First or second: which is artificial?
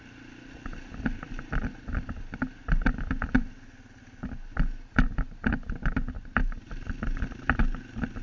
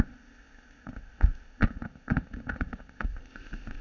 second